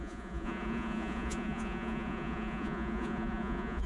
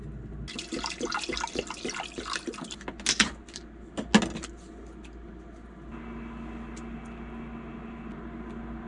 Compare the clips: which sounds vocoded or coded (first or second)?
first